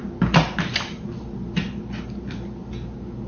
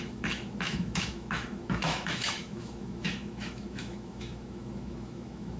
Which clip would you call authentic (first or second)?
first